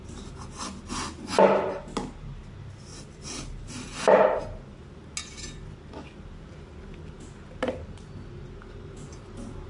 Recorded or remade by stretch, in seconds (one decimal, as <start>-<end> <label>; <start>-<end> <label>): 0.0-9.7 recorded